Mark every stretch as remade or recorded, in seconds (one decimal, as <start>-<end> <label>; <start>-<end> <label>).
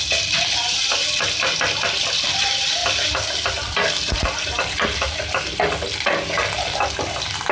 0.0-7.5 recorded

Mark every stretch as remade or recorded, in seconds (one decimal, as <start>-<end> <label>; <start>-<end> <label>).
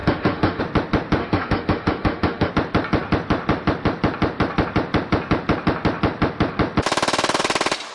0.0-0.6 remade; 0.6-1.2 recorded; 1.2-2.5 remade; 2.5-7.9 recorded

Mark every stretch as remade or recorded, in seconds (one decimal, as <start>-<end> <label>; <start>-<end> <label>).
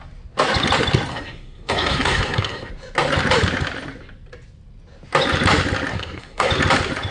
0.0-1.1 recorded; 1.1-2.7 remade; 2.7-5.9 recorded; 5.9-6.5 remade; 6.5-7.1 recorded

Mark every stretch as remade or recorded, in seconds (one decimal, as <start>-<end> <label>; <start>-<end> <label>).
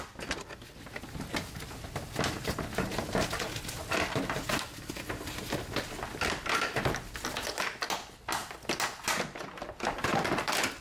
0.0-10.8 recorded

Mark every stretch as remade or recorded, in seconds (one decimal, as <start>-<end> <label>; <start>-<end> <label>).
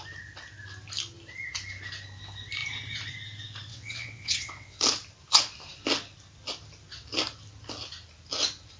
0.0-3.7 recorded; 3.7-4.8 remade; 4.8-8.8 recorded